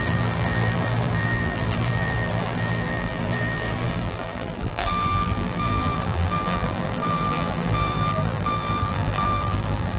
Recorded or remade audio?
remade